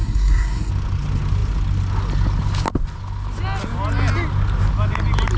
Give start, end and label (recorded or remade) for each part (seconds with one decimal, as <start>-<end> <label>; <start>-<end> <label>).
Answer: 0.0-0.7 remade; 0.7-5.4 recorded